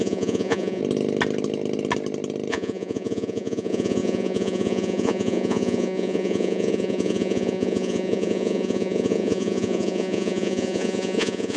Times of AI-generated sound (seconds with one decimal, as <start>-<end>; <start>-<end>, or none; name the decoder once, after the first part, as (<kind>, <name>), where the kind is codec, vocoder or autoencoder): 0.0-0.8 (vocoder, Vocos); 2.5-11.6